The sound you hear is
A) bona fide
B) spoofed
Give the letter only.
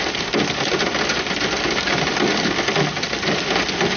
A